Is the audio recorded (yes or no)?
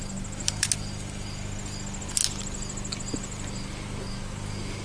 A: yes